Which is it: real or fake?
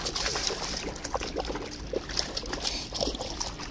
real